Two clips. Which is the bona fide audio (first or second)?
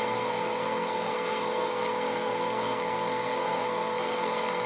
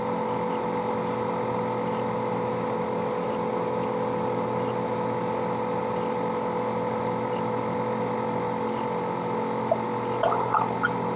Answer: second